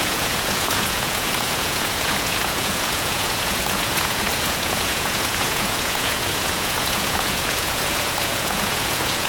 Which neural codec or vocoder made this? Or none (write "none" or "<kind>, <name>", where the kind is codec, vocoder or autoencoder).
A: vocoder, Vocos